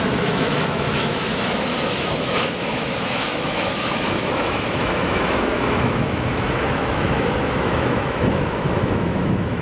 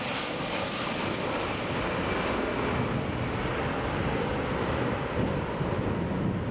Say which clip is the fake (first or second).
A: first